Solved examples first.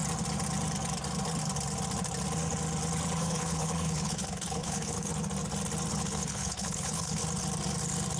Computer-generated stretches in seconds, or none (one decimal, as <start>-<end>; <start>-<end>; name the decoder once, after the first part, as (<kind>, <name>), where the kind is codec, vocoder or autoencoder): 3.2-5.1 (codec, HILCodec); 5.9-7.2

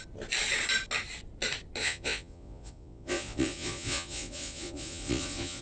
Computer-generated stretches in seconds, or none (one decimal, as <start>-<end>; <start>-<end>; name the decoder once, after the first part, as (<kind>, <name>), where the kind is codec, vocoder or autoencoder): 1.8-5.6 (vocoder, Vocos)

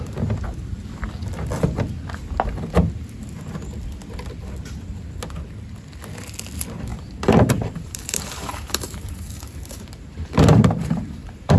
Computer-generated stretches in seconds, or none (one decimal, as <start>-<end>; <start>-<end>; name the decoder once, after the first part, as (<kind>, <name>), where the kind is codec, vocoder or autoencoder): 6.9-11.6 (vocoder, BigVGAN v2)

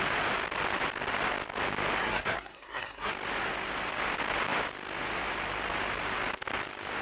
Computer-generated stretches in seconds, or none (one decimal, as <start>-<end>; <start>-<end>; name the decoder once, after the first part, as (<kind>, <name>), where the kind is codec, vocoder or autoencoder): 2.0-3.1 (codec, SNAC)

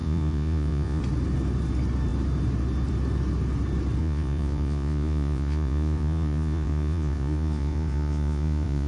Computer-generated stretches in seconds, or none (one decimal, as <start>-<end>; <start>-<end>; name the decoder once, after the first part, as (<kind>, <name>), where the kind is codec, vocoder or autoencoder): 0.0-1.0 (vocoder, Vocos); 4.0-8.9

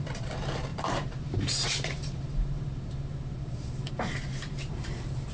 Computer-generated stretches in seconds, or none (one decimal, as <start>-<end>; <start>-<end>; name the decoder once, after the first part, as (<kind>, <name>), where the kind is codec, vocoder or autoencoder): 0.0-5.3 (vocoder, BigVGAN v2)